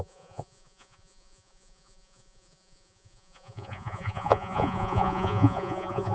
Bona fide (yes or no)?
no